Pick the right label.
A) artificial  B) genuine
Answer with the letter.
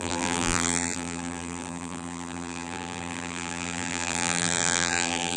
A